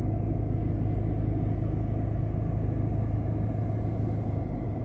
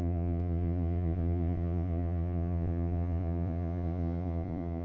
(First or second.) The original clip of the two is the first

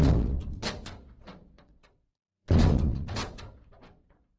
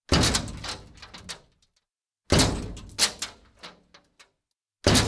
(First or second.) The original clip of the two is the second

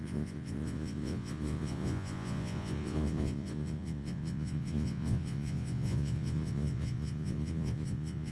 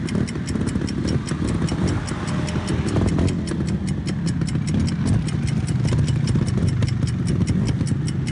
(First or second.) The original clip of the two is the second